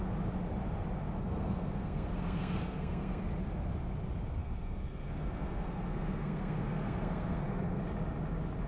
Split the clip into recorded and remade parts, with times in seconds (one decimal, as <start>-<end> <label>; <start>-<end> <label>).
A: 0.0-1.2 recorded; 1.2-3.2 remade; 3.2-4.4 recorded; 4.4-7.8 remade; 7.8-8.7 recorded